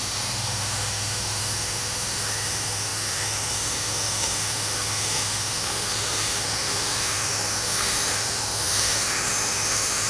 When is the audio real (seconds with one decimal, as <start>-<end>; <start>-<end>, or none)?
none